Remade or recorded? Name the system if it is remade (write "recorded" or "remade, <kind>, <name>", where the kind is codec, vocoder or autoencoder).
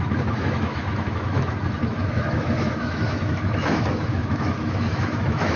remade, autoencoder, DAC-VAE